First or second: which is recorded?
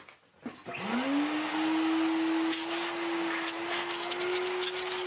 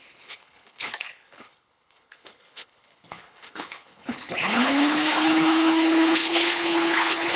first